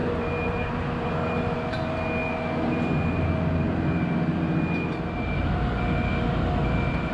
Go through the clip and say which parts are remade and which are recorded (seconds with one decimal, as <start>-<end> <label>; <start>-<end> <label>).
0.0-1.1 remade; 1.1-7.1 recorded